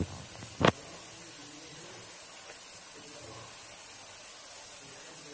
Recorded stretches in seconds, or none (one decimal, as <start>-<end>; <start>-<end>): 0.0-5.3

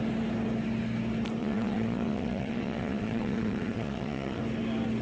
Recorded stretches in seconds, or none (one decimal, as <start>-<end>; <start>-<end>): 0.0-1.4; 4.4-5.0

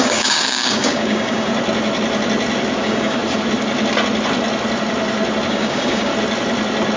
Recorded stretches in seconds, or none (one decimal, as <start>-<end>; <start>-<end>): 1.5-2.8; 3.2-5.5; 6.1-7.0

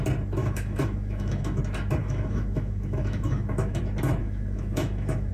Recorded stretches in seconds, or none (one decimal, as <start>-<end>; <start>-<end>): 0.0-0.4; 1.6-2.0; 3.8-4.2

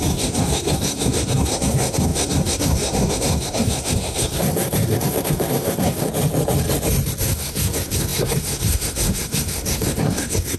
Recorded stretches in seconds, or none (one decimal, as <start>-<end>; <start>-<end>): 6.1-7.2